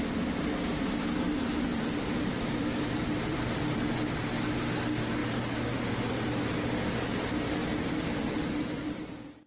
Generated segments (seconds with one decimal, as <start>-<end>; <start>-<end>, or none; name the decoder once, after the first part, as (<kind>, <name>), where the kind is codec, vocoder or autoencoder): 1.7-3.8 (vocoder, BigVGAN v2)